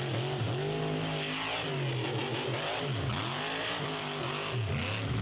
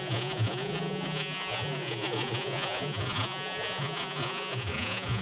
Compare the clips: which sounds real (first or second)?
first